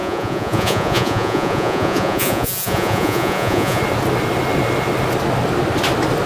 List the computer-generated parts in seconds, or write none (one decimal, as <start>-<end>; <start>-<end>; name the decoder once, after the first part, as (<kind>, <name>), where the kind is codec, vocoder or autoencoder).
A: 0.0-3.8 (vocoder, Vocos)

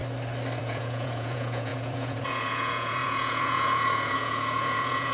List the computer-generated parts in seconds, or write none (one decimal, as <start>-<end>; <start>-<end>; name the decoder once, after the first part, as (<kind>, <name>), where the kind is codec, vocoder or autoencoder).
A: 0.6-5.1 (vocoder, Vocos)